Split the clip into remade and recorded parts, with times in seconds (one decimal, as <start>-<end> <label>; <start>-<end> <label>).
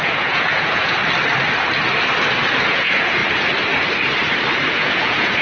0.0-1.0 remade; 1.0-2.7 recorded; 2.7-3.2 remade; 3.2-4.7 recorded; 4.7-5.4 remade